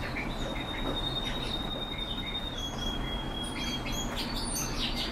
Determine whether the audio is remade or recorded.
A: recorded